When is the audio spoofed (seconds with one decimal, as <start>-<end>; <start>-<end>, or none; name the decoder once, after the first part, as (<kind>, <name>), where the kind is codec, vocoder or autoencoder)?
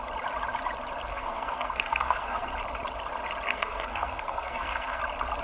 1.1-2.5 (codec, SNAC); 3.5-5.0